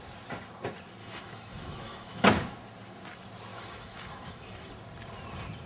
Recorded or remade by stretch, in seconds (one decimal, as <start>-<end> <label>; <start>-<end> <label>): 0.0-1.0 recorded; 1.0-2.3 remade; 2.3-3.5 recorded; 3.5-4.7 remade; 4.7-5.7 recorded